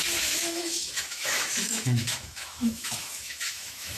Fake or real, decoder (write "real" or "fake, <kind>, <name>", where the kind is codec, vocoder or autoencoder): fake, autoencoder, DAC-VAE